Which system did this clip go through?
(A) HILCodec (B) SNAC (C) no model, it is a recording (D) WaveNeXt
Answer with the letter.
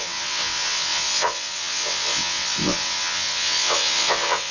D